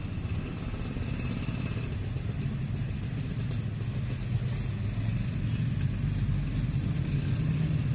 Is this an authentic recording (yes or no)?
yes